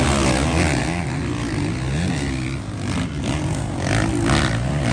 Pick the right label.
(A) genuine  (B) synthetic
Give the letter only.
A